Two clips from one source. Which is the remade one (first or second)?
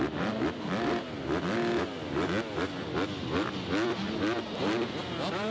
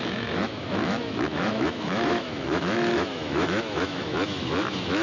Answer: second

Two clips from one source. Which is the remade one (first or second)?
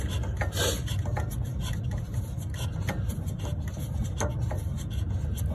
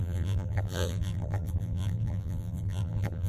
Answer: second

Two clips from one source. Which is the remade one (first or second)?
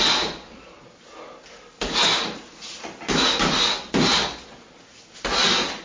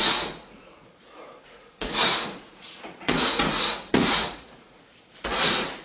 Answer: second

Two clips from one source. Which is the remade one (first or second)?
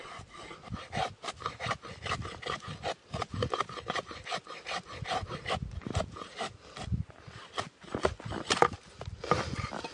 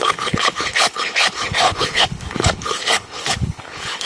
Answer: second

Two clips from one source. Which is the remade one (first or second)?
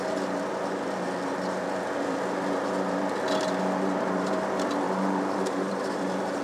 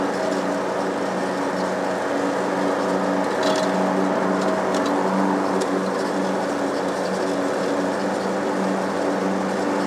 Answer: first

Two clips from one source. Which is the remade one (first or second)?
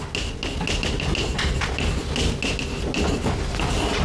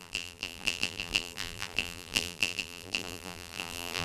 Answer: second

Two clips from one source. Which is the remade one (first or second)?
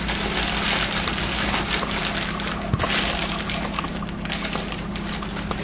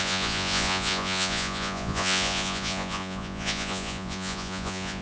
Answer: second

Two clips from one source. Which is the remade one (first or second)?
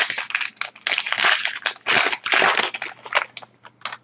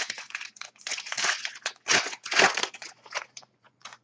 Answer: second